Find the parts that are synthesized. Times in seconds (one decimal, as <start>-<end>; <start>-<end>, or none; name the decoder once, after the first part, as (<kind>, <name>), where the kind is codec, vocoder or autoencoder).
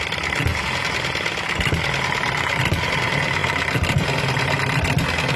none